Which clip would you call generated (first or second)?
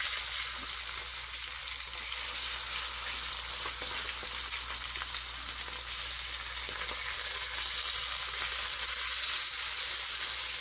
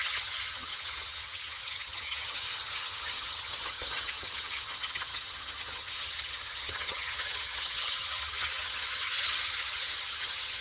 second